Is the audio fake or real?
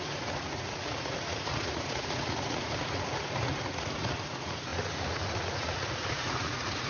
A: fake